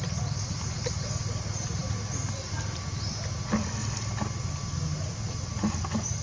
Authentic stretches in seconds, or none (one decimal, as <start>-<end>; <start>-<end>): 0.0-6.2